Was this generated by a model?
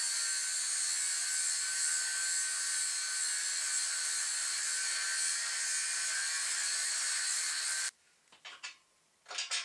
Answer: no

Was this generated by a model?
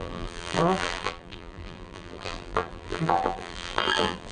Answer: yes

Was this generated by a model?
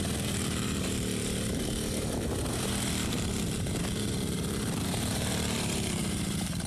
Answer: yes